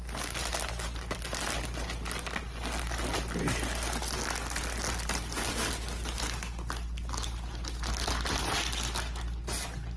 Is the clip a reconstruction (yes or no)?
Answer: no